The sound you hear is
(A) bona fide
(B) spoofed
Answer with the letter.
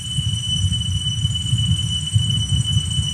A